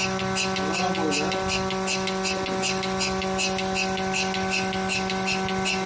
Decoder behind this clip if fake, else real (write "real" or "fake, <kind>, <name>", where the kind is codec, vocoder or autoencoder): real